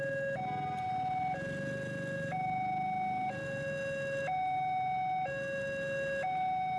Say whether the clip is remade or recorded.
recorded